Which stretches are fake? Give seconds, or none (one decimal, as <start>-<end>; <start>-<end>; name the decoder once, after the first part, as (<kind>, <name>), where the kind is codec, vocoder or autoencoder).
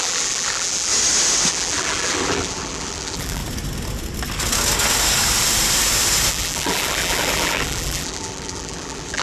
0.0-0.9 (vocoder, BigVGAN v2); 1.5-3.4; 6.3-9.2